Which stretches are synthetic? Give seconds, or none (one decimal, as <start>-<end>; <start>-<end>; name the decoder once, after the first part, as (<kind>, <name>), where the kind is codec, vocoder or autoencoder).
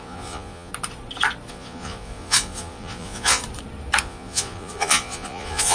0.0-0.7 (vocoder, Vocos); 1.5-3.4; 4.0-5.7